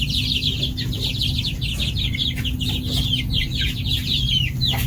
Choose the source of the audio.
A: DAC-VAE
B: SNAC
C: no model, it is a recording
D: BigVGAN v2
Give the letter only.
C